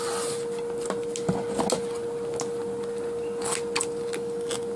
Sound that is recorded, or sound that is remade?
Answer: recorded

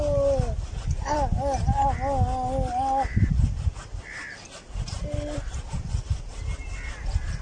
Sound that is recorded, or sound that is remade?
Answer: recorded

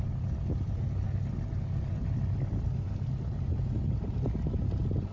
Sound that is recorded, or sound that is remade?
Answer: recorded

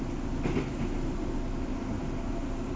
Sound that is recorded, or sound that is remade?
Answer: recorded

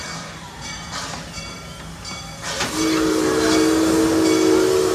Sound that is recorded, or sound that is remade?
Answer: recorded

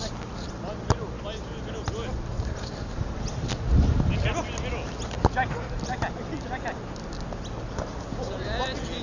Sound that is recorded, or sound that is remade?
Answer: recorded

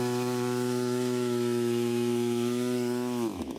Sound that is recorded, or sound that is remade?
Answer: remade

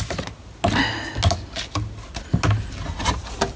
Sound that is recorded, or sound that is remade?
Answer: recorded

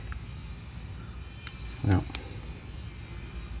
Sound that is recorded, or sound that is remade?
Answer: recorded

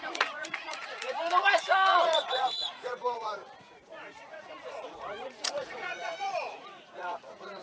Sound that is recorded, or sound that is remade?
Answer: remade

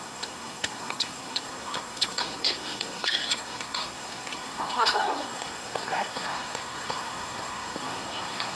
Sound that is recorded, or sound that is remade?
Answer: remade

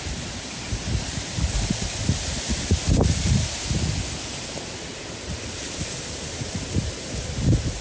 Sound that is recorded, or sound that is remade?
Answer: recorded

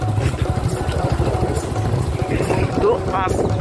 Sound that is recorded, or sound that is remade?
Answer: recorded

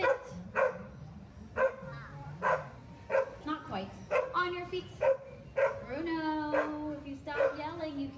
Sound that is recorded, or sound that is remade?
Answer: recorded